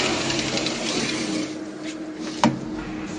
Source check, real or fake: real